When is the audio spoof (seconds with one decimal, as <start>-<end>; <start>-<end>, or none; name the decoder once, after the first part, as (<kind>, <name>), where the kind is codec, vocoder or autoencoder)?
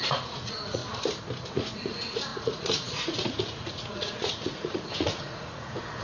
0.0-0.8 (vocoder, Vocos); 1.5-6.0